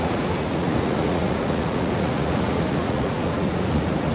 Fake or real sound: fake